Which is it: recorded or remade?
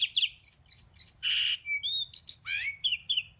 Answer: recorded